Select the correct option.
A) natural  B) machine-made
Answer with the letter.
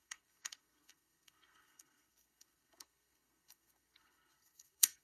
B